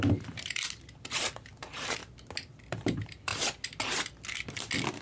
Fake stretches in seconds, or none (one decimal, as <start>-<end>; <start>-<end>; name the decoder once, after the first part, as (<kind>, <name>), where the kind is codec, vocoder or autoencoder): 0.0-2.0 (vocoder, BigVGAN v2); 2.7-3.3